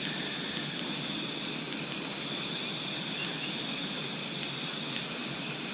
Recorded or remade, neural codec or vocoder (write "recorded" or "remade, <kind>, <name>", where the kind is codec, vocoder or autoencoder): recorded